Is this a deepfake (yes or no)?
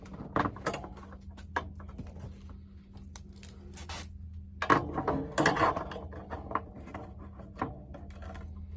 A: no